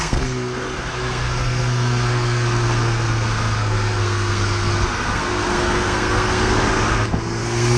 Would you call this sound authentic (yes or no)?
no